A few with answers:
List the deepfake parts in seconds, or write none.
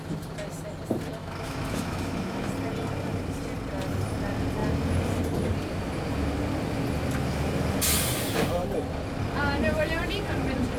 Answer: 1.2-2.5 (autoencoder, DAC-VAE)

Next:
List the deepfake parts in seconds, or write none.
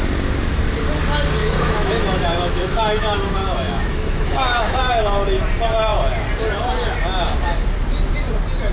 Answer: 1.4-4.9 (autoencoder, DAC-VAE)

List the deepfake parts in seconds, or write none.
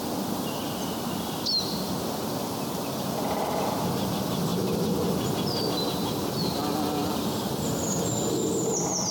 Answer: none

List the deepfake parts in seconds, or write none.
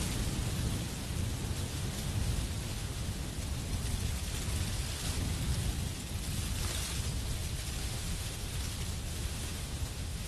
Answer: 1.7-2.3 (autoencoder, DAC-VAE); 2.7-3.3; 7.8-8.6; 9.1-10.3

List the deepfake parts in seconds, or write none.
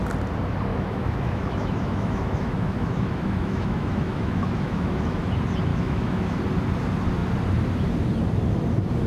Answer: 0.7-5.3 (autoencoder, DAC-VAE); 5.7-6.4